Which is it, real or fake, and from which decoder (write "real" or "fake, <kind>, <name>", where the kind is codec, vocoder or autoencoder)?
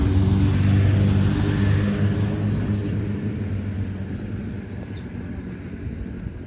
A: real